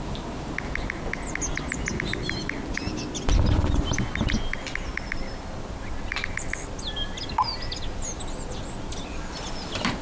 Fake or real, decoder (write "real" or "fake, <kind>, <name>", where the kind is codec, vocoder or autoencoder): real